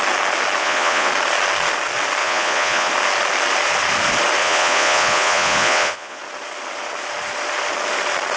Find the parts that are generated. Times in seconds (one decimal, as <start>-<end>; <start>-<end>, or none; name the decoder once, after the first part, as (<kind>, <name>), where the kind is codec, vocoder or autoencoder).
0.6-1.1 (vocoder, Vocos); 2.2-2.9; 4.4-6.2